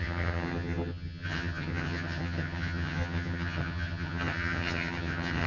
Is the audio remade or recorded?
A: remade